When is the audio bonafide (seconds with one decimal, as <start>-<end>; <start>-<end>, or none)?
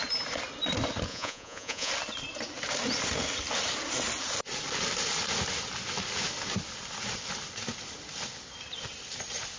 0.0-1.1; 1.9-9.6